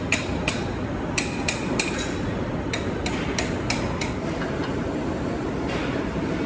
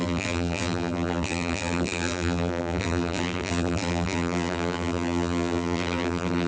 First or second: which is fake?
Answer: second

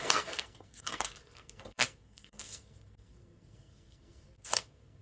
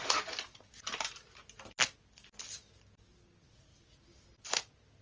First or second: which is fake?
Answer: first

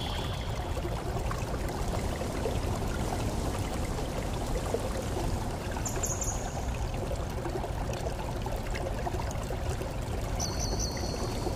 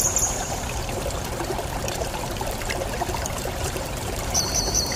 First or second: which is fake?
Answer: second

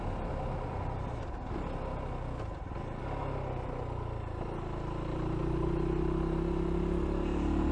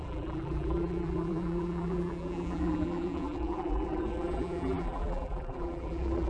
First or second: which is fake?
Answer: second